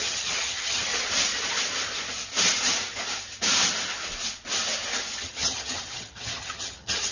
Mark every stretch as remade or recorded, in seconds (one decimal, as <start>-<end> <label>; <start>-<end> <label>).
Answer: 0.0-0.9 remade; 0.9-5.2 recorded; 5.2-7.1 remade